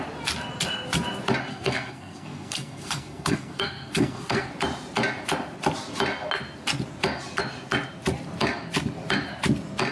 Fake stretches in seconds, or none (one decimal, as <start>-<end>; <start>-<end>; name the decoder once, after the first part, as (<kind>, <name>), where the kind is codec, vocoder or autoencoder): 1.5-4.5 (codec, SNAC)